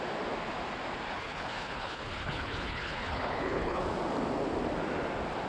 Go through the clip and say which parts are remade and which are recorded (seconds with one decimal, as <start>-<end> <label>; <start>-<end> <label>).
0.0-1.1 recorded; 1.1-3.8 remade; 3.8-5.5 recorded